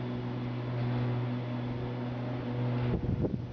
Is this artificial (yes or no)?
no